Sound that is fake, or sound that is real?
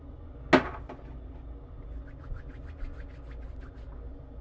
real